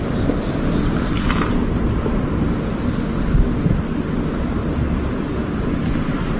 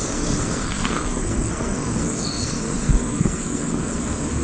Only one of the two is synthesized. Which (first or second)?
second